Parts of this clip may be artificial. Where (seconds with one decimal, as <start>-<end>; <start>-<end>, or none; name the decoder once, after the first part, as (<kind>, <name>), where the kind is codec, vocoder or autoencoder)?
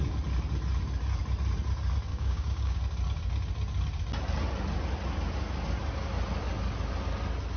2.1-2.8 (codec, DAC)